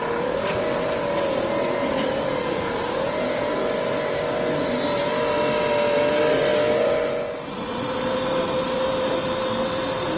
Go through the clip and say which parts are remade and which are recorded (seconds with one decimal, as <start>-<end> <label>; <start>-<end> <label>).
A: 0.0-10.2 recorded